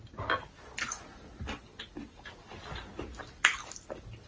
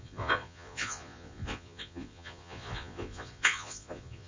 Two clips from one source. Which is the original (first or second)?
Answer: first